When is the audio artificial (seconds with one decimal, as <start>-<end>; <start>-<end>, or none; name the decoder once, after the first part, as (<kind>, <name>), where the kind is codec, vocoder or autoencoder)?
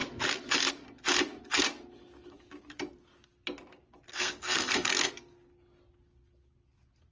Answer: 4.1-5.1 (codec, SNAC)